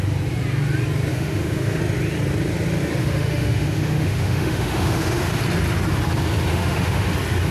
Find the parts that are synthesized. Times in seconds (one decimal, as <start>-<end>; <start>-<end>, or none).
1.1-1.8; 3.0-5.4; 6.5-7.1